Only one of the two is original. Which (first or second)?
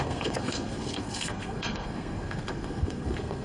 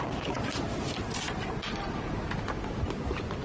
second